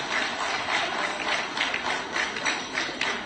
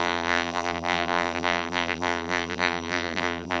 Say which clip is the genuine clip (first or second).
first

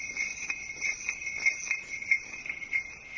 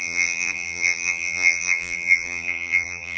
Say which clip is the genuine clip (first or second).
first